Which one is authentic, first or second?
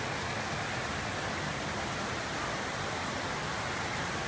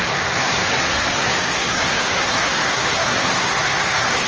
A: first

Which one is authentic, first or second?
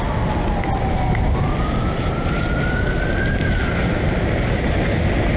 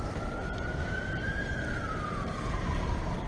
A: first